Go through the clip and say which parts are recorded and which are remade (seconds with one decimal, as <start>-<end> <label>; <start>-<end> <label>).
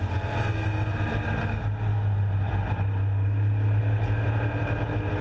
0.0-5.2 recorded